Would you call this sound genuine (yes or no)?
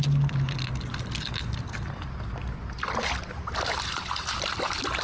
yes